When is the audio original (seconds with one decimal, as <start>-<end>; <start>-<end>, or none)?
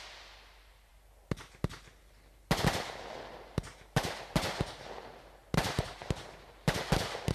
0.0-7.3